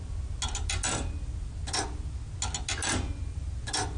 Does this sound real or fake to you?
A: real